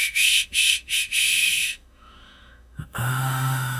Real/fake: fake